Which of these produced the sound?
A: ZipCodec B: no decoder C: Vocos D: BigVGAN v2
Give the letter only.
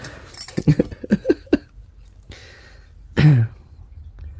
B